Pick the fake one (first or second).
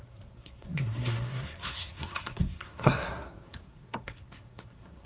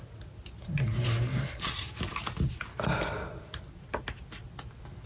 first